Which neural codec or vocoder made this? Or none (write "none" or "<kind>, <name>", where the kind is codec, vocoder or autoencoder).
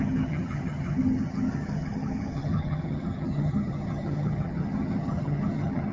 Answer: vocoder, HiFi-GAN